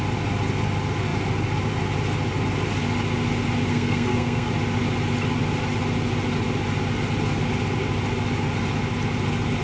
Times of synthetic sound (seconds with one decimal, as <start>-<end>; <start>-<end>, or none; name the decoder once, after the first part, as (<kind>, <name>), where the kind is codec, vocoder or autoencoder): 3.7-4.5 (codec, SNAC)